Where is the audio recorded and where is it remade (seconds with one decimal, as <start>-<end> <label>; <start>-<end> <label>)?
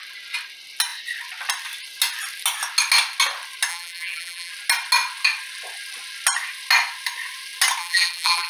0.0-3.7 recorded; 3.7-4.5 remade; 4.5-7.8 recorded; 7.8-8.5 remade